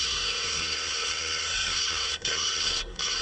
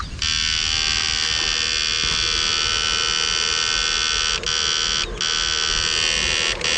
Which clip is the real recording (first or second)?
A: second